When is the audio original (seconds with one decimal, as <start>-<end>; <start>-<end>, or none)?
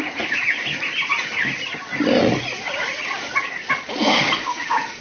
1.1-2.2; 3.0-4.5